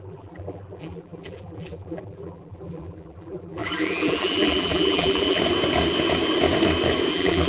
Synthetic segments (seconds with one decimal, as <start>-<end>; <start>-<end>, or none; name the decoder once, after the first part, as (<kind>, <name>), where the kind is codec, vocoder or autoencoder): 0.0-5.4 (vocoder, BigVGAN v2); 7.1-7.5